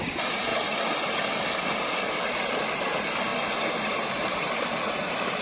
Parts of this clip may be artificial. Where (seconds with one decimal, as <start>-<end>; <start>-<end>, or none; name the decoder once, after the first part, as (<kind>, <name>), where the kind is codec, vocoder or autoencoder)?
none